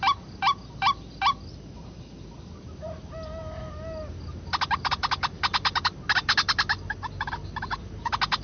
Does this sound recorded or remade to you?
recorded